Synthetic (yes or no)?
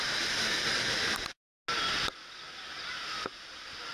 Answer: no